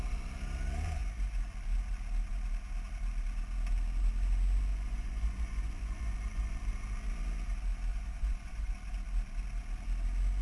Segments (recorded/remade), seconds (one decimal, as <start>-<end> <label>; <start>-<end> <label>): 0.0-4.7 recorded; 4.7-6.6 remade; 6.6-7.9 recorded; 7.9-8.7 remade; 8.7-10.4 recorded